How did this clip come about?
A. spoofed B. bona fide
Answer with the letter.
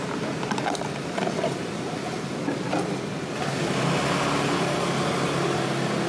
B